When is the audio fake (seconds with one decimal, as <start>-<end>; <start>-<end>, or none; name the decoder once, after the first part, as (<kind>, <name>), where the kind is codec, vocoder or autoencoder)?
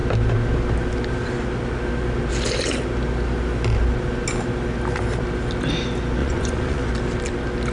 6.2-6.9 (vocoder, Vocos)